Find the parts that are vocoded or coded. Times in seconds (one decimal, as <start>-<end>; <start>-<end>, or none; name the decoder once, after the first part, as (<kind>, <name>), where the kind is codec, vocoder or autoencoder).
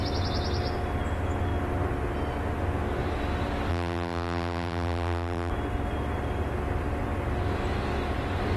3.7-5.5 (vocoder, BigVGAN v2)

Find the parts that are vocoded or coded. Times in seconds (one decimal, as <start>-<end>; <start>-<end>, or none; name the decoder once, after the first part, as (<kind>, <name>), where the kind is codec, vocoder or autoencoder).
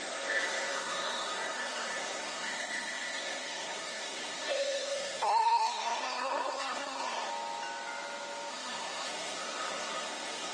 0.0-7.3 (codec, SNAC); 8.5-10.5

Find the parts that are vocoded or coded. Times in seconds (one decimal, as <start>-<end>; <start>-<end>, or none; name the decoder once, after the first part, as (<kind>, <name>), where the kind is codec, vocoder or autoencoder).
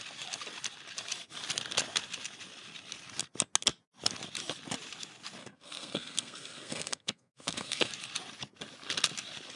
5.4-7.9 (codec, SNAC)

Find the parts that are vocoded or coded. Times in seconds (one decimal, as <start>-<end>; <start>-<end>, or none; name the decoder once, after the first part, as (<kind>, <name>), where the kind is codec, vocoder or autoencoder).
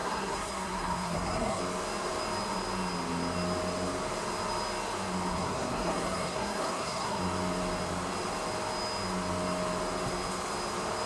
0.0-1.6 (codec, SNAC); 5.3-7.2